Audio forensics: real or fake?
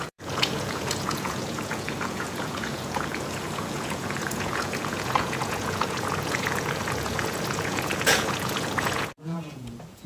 fake